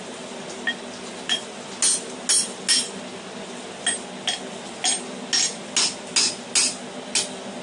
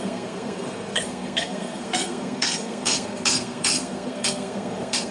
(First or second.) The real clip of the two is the first